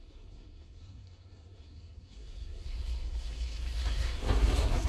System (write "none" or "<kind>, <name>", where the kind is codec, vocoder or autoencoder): codec, SNAC